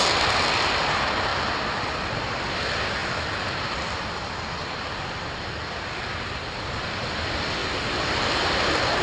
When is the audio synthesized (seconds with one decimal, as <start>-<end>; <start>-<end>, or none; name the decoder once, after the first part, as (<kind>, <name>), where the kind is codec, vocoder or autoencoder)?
0.0-7.6 (vocoder, BigVGAN v2); 8.6-9.0